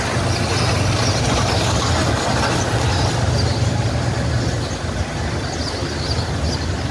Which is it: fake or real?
real